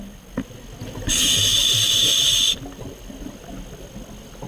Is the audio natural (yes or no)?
yes